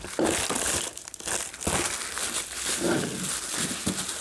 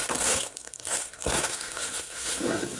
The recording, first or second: first